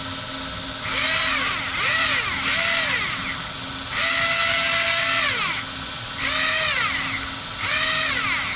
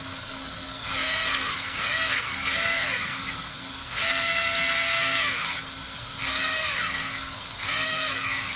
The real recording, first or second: first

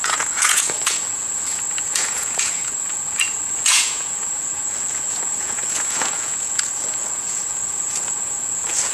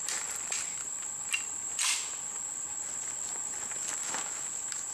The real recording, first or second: second